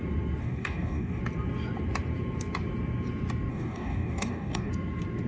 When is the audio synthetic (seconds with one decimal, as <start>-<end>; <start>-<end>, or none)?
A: 0.4-1.2; 3.5-4.7